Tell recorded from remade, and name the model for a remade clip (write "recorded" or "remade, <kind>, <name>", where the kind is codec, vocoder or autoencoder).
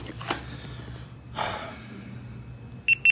recorded